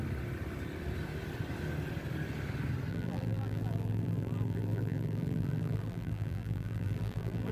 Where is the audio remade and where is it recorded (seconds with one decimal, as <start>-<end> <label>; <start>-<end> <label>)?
0.0-2.9 recorded; 2.9-7.5 remade